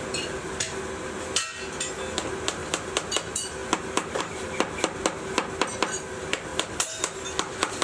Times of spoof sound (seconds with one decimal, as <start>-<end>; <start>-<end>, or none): 2.6-3.1; 6.5-7.8